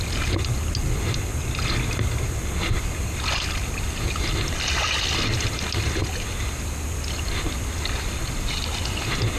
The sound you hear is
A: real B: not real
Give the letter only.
A